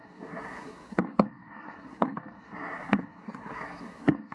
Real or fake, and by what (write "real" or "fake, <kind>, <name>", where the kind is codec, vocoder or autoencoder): fake, codec, SNAC